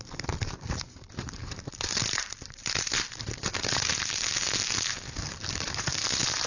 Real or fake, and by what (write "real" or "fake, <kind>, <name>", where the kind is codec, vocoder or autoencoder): fake, vocoder, BigVGAN v2